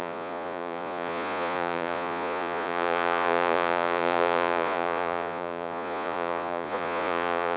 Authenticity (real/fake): fake